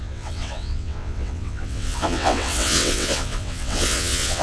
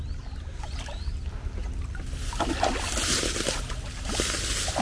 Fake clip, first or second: first